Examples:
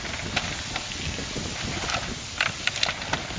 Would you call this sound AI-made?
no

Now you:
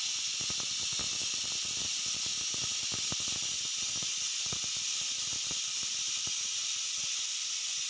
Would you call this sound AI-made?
no